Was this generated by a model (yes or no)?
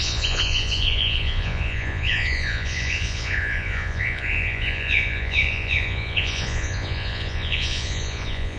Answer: yes